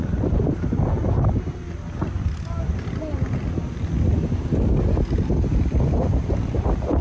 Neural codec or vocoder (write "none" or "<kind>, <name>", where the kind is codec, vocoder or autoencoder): none